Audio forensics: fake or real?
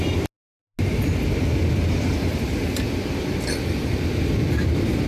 real